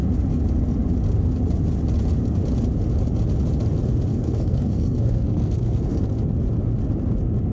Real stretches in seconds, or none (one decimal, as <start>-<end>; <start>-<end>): 0.0-4.1; 6.0-7.5